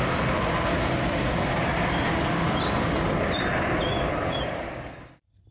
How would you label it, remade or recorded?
recorded